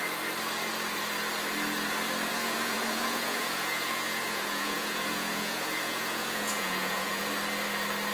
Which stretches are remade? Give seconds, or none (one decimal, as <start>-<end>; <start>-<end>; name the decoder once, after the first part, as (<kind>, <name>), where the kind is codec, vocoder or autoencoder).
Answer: 2.3-7.2 (vocoder, Vocos)